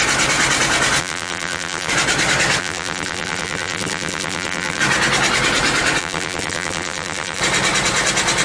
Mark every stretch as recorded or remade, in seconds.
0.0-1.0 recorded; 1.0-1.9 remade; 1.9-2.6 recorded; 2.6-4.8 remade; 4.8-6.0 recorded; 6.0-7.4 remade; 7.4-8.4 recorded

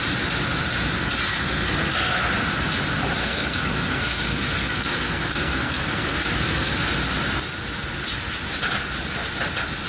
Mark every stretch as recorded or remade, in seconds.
0.0-1.3 recorded; 1.3-2.3 remade; 2.3-3.2 recorded; 3.2-6.7 remade; 6.7-9.9 recorded

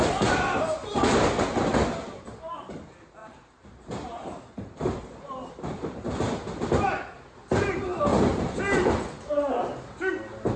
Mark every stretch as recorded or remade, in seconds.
0.0-3.2 recorded; 3.2-5.5 remade; 5.5-8.1 recorded; 8.1-8.6 remade; 8.6-10.6 recorded